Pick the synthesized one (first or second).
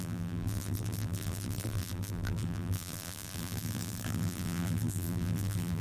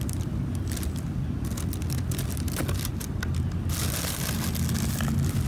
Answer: first